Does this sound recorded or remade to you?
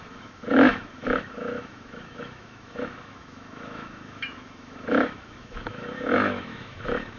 remade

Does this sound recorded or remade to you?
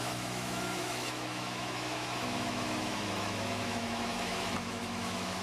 remade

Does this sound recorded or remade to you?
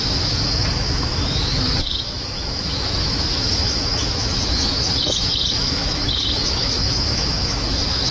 remade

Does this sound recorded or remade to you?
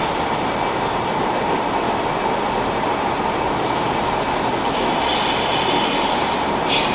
recorded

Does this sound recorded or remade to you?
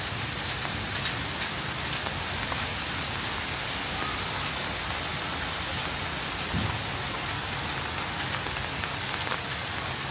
recorded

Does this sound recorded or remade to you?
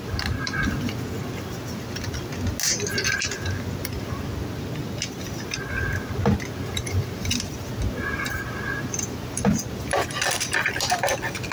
recorded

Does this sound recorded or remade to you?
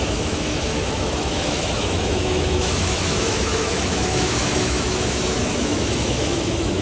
remade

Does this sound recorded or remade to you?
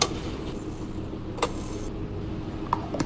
recorded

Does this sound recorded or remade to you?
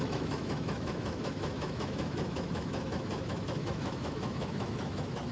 remade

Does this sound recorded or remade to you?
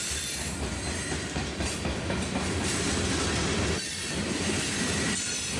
recorded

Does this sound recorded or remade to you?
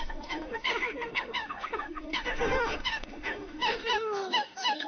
remade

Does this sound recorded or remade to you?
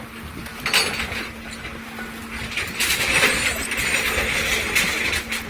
recorded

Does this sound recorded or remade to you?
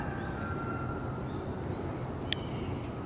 recorded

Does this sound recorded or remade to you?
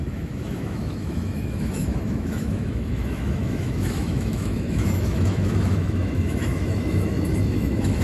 remade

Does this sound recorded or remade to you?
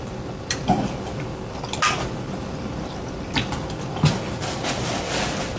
recorded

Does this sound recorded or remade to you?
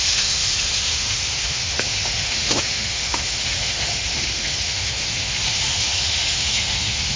remade